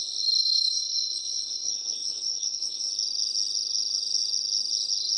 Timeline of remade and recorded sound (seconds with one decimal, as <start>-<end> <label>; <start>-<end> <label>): 0.0-0.4 recorded; 0.4-2.9 remade; 2.9-5.2 recorded